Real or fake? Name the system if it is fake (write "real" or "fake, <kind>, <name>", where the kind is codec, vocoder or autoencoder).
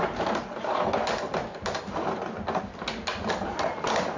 real